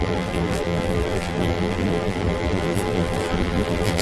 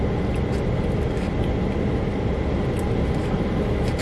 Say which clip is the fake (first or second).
first